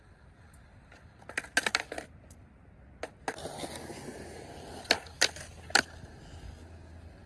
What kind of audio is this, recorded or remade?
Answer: recorded